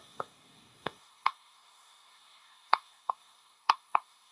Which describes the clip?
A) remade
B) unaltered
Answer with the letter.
A